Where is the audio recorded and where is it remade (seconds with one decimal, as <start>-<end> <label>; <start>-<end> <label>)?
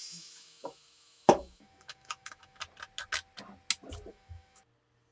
0.0-2.6 remade; 2.6-4.1 recorded; 4.1-4.6 remade; 4.6-5.1 recorded